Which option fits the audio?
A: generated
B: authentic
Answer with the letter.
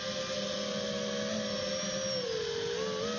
B